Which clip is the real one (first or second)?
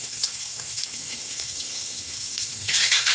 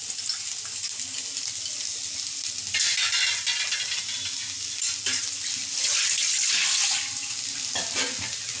second